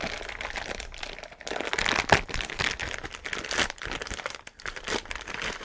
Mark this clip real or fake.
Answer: fake